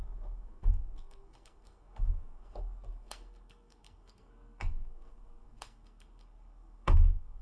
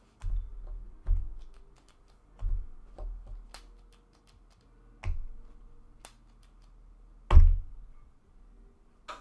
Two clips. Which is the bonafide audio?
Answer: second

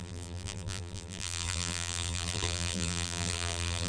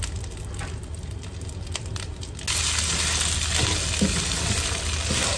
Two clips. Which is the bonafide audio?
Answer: second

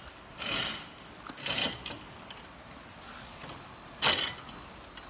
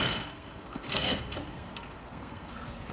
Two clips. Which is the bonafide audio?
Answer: first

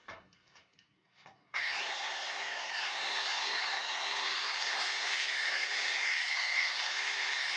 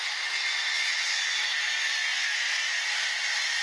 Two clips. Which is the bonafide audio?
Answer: second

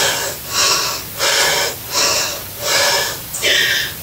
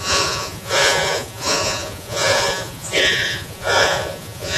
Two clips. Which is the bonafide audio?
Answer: first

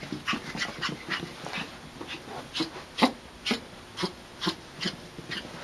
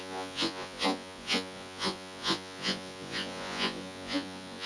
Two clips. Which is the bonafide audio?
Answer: first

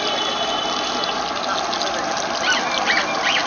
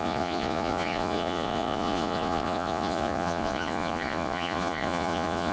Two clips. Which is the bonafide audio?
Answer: first